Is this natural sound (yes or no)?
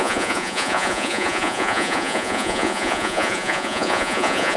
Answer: no